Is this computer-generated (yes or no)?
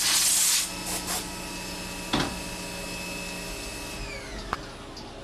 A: no